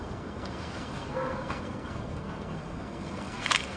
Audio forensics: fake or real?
fake